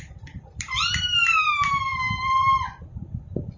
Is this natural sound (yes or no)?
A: no